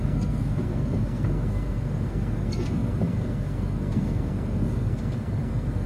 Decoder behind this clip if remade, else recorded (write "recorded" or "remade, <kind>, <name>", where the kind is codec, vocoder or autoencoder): remade, codec, SNAC